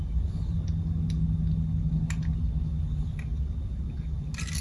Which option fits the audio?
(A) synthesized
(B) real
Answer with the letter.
B